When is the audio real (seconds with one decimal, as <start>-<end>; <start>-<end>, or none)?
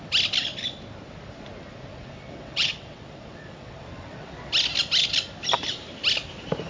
0.0-1.9; 4.3-6.7